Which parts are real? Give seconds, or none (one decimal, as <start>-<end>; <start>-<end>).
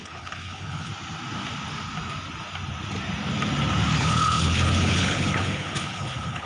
0.9-4.0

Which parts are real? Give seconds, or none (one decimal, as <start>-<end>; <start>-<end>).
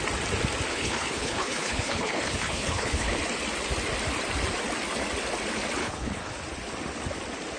0.0-0.7; 3.2-5.8; 6.3-7.6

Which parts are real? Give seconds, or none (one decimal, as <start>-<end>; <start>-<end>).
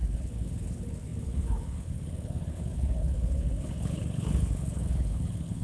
none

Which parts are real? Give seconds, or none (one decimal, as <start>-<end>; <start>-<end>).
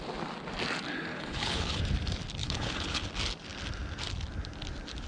0.0-1.1; 1.8-2.4; 3.0-5.1